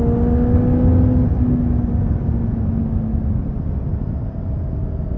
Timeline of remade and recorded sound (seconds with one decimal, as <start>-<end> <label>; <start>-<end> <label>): 0.0-5.2 recorded